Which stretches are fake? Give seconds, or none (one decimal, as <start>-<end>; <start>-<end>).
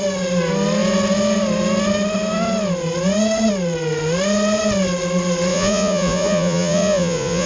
5.5-7.5